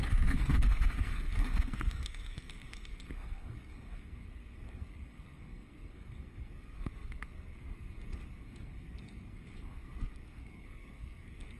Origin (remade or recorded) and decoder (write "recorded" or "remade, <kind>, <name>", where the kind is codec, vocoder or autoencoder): remade, codec, SNAC